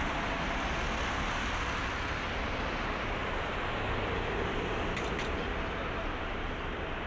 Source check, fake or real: real